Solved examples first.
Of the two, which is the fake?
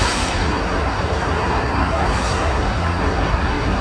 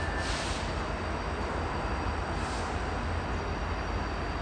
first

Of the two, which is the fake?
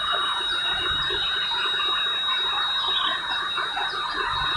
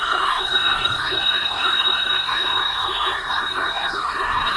second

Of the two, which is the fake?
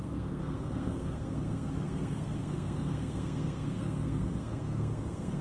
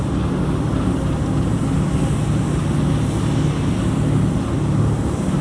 first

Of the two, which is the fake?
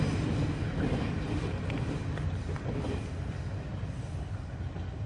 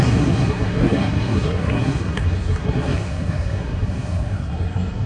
second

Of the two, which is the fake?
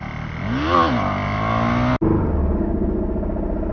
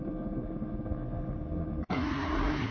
second